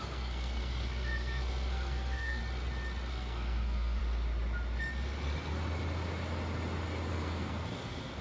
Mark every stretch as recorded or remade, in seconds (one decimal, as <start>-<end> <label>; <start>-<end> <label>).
0.0-2.4 remade; 2.4-3.1 recorded; 3.1-4.0 remade; 4.0-7.1 recorded; 7.1-8.2 remade